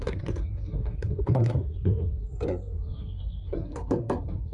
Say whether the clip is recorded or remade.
remade